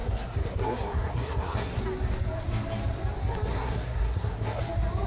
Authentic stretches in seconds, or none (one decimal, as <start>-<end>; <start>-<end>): 1.8-3.5; 4.6-5.1